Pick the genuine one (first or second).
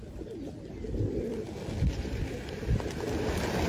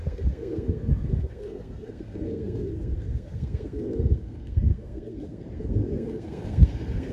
first